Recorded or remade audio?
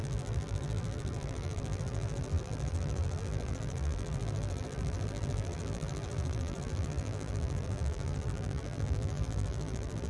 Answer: remade